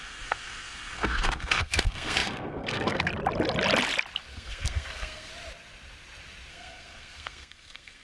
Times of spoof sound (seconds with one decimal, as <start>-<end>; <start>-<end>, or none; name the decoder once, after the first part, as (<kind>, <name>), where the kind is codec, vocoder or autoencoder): 0.0-3.1 (codec, SNAC); 4.3-5.3; 6.5-8.0